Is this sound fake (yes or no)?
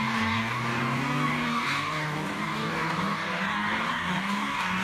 yes